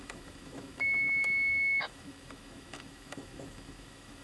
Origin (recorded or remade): remade